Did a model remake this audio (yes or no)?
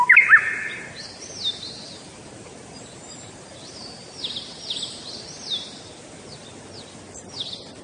no